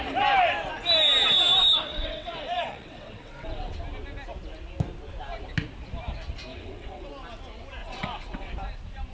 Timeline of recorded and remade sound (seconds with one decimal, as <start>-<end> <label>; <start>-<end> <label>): 0.0-1.9 recorded; 1.9-3.8 remade; 3.8-6.5 recorded; 6.5-7.1 remade; 7.1-7.8 recorded; 7.8-8.5 remade; 8.5-9.1 recorded